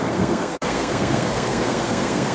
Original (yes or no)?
no